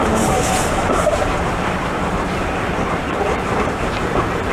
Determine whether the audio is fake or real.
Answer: fake